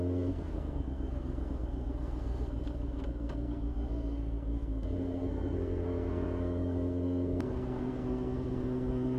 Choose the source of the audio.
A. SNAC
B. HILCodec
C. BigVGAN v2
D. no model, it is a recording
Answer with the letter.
A